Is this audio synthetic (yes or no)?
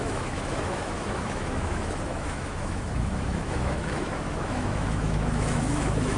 yes